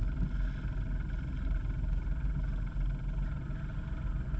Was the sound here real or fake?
real